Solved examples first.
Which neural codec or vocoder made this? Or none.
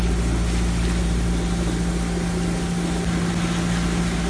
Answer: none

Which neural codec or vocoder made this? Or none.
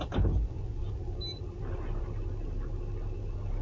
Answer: none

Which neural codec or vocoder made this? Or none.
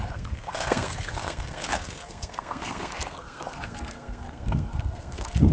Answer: codec, SNAC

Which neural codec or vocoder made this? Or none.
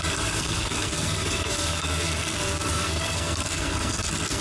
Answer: codec, SNAC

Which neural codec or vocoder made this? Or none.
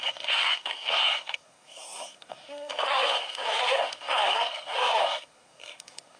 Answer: codec, SNAC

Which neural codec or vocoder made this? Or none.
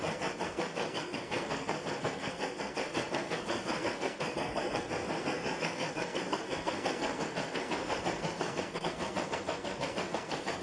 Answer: codec, SNAC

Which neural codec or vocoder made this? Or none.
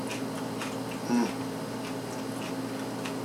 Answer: none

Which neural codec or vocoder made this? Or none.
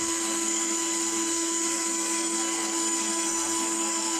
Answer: codec, SNAC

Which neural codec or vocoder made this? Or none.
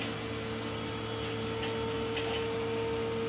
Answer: none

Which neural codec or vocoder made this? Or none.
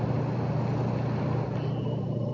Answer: none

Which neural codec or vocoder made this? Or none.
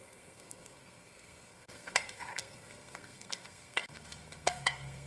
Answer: codec, SNAC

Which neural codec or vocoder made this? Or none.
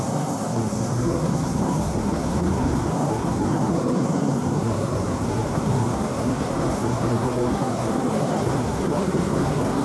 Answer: codec, SNAC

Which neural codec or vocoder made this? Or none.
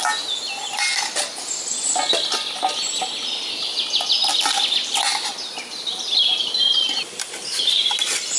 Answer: none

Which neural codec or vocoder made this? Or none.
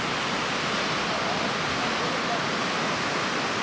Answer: none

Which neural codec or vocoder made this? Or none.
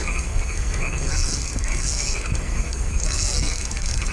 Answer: codec, SNAC